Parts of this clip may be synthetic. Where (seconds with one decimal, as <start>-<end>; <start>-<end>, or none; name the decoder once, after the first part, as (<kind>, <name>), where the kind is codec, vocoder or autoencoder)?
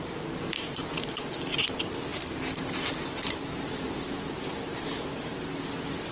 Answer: none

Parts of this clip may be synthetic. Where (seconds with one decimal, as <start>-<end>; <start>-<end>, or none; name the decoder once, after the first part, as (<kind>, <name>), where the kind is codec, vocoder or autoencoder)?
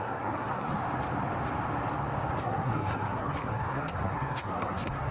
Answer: 0.0-0.7 (codec, SNAC); 2.4-5.1